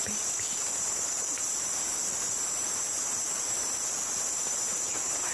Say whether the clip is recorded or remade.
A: remade